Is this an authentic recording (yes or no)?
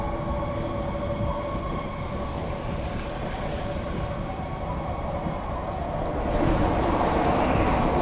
yes